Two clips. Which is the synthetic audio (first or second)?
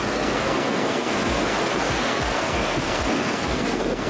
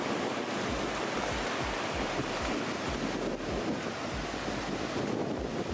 first